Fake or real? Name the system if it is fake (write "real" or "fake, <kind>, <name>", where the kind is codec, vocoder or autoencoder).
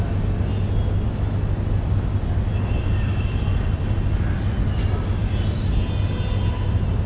real